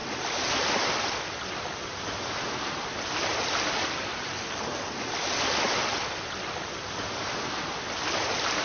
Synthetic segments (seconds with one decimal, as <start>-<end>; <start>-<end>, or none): none